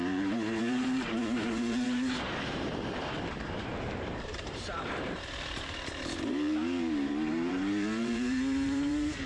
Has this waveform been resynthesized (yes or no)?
yes